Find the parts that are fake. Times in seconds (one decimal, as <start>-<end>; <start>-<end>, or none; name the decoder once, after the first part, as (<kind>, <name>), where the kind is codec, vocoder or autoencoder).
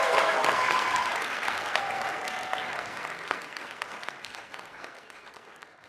0.0-5.9 (codec, SNAC)